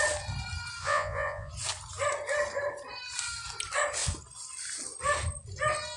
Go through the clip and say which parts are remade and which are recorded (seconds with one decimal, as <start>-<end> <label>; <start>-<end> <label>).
0.0-0.8 recorded; 0.8-1.5 remade; 1.5-6.0 recorded

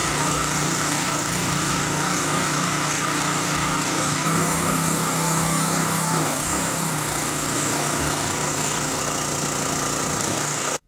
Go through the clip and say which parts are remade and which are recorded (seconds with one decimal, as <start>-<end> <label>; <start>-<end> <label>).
0.0-9.0 remade; 9.0-10.2 recorded; 10.2-10.9 remade

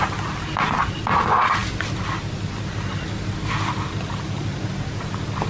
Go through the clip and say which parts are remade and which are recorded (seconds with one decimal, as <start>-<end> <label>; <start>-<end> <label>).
0.0-5.5 recorded

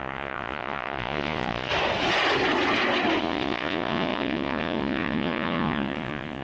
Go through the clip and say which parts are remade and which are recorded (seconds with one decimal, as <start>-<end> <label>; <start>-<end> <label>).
0.0-1.7 remade; 1.7-3.2 recorded; 3.2-6.4 remade

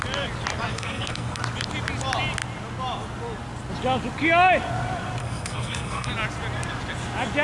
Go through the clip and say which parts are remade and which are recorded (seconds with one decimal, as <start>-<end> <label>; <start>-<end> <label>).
0.0-0.7 recorded; 0.7-1.4 remade; 1.4-5.2 recorded; 5.2-6.1 remade; 6.1-7.4 recorded

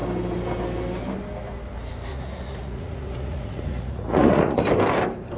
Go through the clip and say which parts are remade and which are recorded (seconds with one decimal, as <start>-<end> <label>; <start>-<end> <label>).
0.0-2.1 recorded; 2.1-4.6 remade; 4.6-5.4 recorded

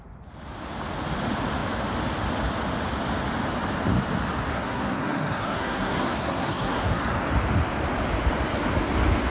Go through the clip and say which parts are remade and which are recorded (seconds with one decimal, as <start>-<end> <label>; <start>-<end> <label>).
0.0-4.5 recorded; 4.5-7.0 remade; 7.0-9.3 recorded